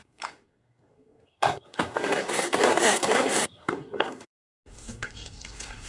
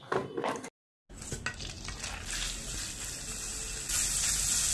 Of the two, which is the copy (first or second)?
first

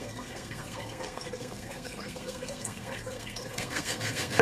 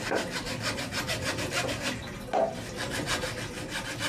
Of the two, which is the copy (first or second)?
first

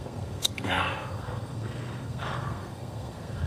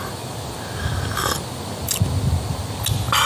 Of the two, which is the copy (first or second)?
first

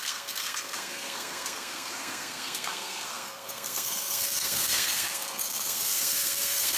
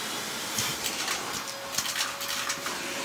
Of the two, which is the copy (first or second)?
first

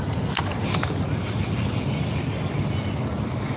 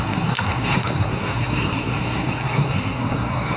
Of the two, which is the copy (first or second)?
second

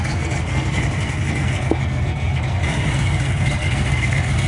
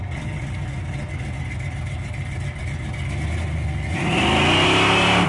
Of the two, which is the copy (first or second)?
first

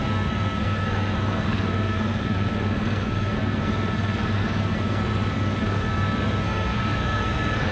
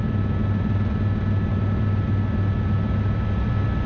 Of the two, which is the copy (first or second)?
first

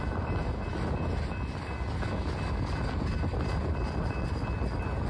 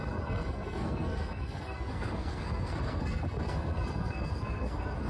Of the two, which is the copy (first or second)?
second